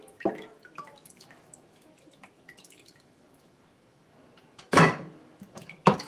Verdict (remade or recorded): remade